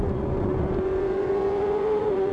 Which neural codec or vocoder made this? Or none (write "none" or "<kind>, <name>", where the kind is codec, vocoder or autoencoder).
vocoder, Vocos